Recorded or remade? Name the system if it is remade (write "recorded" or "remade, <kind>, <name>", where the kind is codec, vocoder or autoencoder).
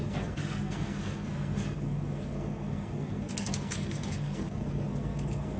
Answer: remade, codec, SNAC